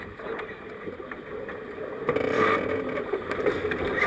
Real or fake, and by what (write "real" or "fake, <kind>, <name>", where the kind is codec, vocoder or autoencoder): real